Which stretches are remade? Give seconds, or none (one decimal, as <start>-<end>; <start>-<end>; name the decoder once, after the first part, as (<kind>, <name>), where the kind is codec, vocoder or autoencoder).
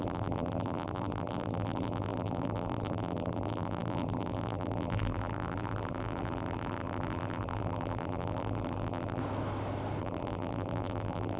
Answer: 0.0-9.2 (vocoder, BigVGAN v2); 10.0-11.4